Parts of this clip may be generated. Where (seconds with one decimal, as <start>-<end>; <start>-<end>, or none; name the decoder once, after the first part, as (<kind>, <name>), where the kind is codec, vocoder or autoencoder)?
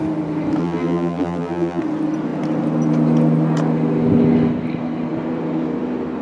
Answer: 0.6-1.8 (vocoder, BigVGAN v2)